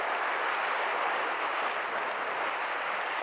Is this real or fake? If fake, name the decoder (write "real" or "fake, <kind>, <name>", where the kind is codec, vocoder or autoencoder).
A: real